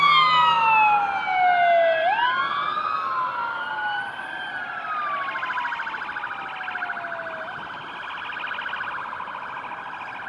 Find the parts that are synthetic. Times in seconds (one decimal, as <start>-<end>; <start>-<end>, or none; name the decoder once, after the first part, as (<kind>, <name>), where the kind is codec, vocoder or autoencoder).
none